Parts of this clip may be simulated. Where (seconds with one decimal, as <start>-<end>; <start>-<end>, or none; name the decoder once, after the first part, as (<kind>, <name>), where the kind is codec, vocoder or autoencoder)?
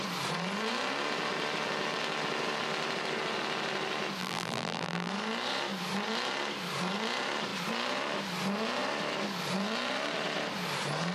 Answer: 4.2-5.1 (vocoder, BigVGAN v2)